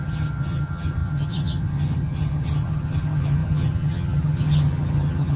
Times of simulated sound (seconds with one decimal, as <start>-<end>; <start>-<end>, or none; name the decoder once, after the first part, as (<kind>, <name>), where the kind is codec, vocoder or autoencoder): 0.0-5.4 (vocoder, HiFi-GAN)